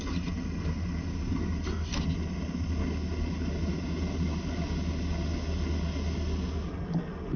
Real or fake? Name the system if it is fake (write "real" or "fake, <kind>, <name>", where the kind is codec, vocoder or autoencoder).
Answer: real